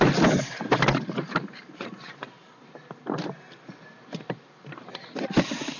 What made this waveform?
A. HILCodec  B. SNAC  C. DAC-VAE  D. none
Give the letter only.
D